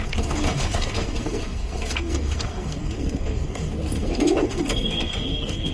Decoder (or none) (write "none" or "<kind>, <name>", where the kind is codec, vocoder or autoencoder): codec, SNAC